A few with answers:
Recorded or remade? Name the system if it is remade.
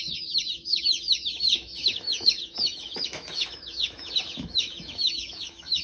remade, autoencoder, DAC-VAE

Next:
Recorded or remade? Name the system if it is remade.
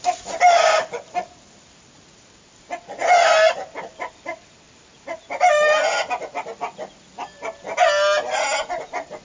recorded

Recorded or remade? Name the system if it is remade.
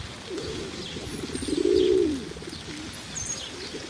recorded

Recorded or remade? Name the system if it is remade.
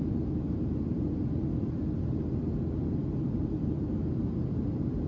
recorded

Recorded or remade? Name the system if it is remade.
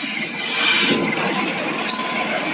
recorded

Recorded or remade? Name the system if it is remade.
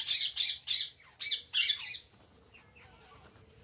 recorded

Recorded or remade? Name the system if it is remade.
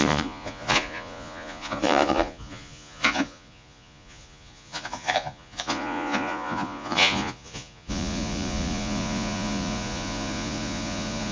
remade, vocoder, Vocos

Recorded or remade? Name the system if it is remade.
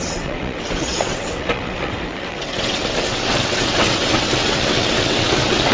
remade, vocoder, WaveNeXt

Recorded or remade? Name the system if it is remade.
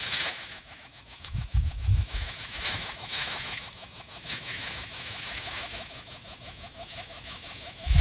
remade, autoencoder, DAC-VAE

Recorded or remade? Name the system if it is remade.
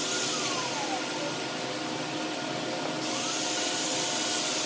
recorded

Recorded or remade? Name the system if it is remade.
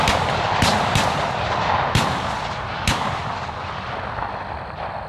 recorded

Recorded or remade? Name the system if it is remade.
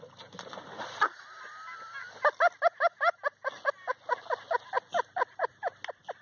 recorded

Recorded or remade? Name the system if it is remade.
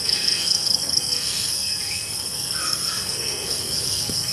remade, codec, SNAC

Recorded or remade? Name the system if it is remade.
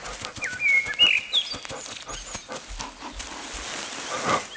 recorded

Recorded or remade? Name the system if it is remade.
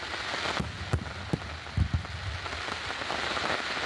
recorded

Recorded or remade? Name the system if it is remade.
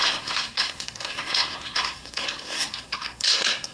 remade, codec, SNAC